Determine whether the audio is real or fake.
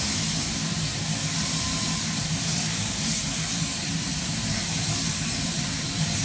fake